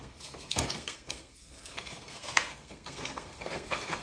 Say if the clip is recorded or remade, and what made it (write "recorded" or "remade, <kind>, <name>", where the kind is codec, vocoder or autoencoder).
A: remade, codec, SNAC